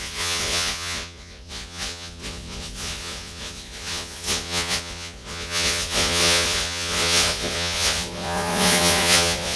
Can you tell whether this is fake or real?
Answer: fake